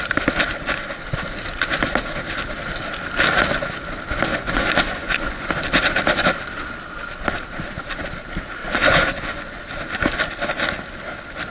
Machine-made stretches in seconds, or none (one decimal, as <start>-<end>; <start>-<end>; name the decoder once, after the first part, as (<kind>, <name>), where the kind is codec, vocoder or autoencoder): 4.3-5.5 (vocoder, Vocos); 8.6-9.6